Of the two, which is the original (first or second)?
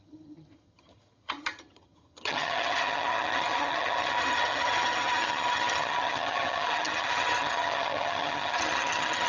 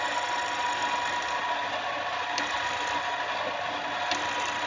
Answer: second